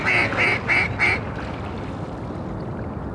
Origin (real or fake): real